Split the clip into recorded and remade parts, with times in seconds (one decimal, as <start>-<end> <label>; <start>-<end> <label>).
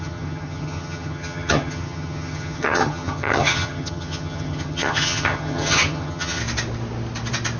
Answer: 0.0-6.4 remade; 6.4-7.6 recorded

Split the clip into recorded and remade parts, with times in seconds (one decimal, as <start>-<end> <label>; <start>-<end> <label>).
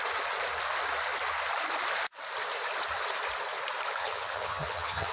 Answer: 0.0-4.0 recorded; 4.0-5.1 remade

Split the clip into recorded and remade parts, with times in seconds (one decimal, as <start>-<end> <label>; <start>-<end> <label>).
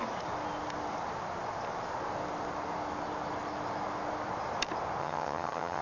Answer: 0.0-5.0 recorded; 5.0-5.8 remade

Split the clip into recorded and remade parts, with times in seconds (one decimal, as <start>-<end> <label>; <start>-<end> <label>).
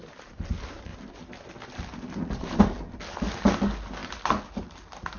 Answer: 0.0-5.2 recorded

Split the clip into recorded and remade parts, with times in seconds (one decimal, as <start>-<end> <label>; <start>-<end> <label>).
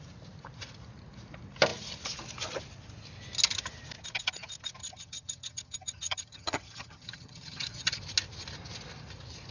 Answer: 0.0-4.8 recorded; 4.8-8.0 remade; 8.0-9.5 recorded